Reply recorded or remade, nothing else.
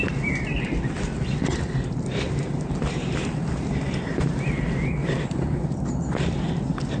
remade